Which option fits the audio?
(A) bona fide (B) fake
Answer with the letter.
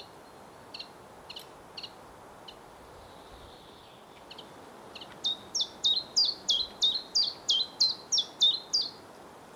A